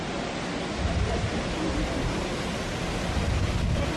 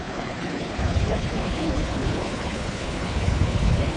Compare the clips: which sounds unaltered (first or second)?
first